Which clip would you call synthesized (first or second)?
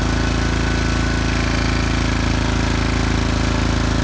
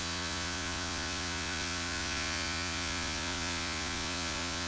second